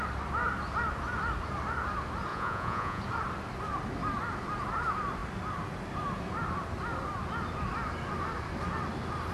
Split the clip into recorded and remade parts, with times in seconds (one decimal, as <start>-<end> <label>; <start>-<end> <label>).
0.0-2.3 recorded; 2.3-3.0 remade; 3.0-9.3 recorded